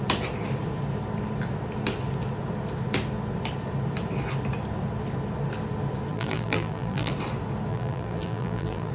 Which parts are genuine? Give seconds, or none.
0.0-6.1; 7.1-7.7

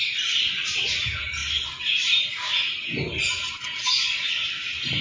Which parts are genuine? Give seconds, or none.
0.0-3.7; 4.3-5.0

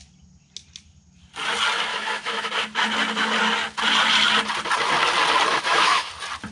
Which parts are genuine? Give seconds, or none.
0.0-1.9; 2.5-5.5; 6.1-6.5

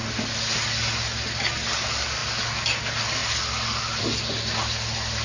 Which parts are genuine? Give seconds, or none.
0.0-5.2

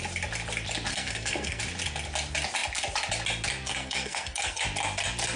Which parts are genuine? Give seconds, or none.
0.0-0.9; 1.6-3.7; 4.6-5.4